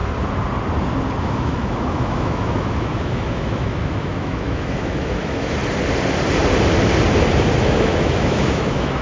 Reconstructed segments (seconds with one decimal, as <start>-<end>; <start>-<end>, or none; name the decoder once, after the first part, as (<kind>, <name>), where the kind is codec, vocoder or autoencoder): 1.2-5.6 (autoencoder, DAC-VAE); 7.6-9.0